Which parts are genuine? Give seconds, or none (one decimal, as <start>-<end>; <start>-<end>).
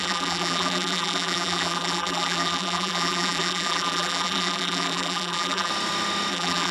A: 5.7-6.3